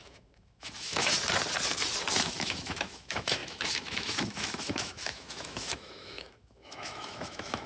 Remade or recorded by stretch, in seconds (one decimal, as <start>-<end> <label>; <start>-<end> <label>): 0.0-1.1 remade; 1.1-2.2 recorded; 2.2-7.7 remade